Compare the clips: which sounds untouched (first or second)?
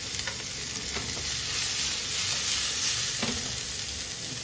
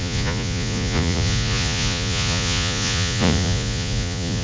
first